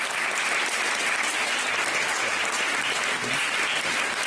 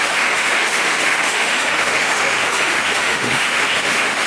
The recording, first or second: first